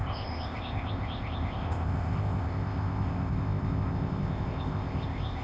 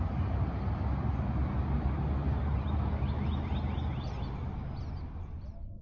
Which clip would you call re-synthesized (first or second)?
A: first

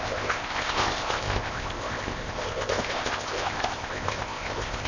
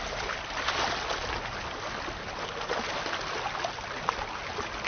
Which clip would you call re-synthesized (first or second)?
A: first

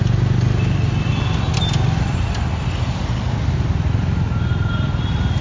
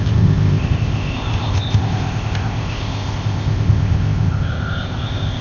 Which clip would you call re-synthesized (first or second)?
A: second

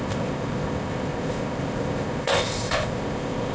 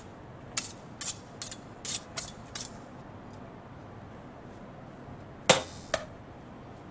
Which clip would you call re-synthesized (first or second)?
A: first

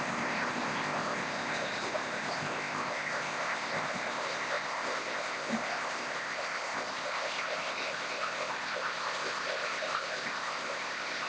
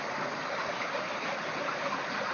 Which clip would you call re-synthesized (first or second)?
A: first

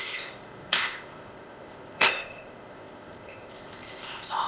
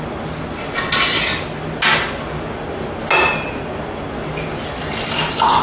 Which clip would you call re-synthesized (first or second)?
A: first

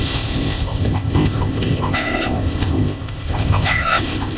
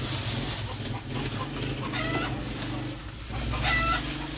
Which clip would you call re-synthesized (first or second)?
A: first